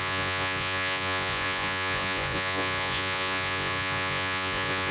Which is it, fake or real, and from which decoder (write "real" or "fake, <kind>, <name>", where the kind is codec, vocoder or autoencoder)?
fake, vocoder, Vocos